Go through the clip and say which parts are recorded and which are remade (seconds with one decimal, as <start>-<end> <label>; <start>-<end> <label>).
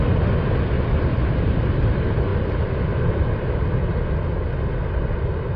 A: 0.0-5.6 recorded